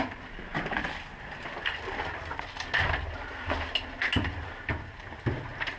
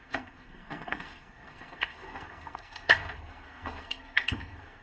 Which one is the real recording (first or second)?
first